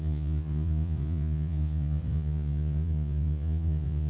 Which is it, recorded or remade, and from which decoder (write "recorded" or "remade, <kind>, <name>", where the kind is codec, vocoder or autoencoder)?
remade, vocoder, Vocos